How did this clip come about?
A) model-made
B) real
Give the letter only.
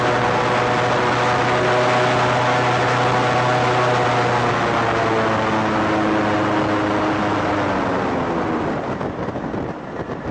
B